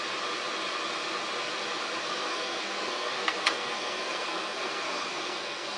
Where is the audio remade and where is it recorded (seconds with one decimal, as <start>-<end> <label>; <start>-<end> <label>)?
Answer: 0.0-2.0 recorded; 2.0-5.8 remade